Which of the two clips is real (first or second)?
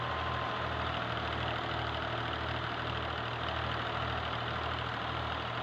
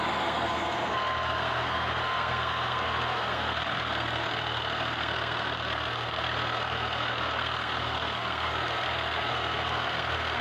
first